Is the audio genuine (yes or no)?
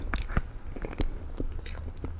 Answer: yes